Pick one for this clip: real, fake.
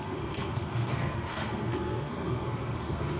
fake